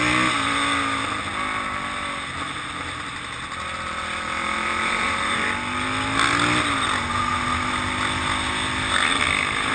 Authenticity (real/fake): real